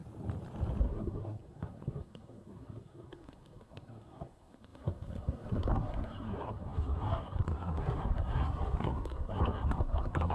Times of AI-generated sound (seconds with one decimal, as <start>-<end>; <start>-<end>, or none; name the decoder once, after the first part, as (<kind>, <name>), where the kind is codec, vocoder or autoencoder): 0.8-10.3 (codec, SNAC)